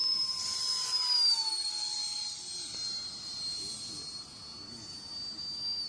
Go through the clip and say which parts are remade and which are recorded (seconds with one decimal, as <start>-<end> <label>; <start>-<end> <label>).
0.0-0.6 remade; 0.6-5.9 recorded

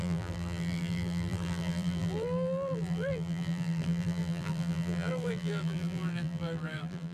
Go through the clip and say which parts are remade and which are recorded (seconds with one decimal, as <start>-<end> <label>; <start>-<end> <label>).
0.0-7.1 remade

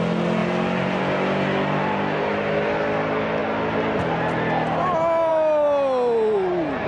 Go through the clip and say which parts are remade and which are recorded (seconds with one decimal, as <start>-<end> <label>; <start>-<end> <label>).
0.0-6.9 recorded

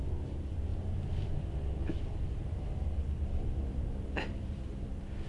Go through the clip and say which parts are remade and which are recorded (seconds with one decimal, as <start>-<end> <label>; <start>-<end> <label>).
0.0-0.7 recorded; 0.7-1.4 remade; 1.4-1.9 recorded; 1.9-5.3 remade

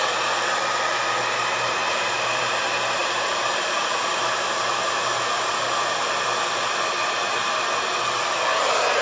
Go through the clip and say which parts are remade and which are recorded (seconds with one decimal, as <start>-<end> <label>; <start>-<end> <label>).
0.0-1.8 recorded; 1.8-2.5 remade; 2.5-3.0 recorded; 3.0-5.5 remade; 5.5-9.0 recorded

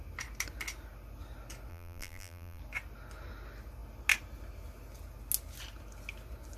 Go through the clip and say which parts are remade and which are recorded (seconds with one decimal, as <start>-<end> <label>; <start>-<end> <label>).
0.0-1.7 recorded; 1.7-2.6 remade; 2.6-6.6 recorded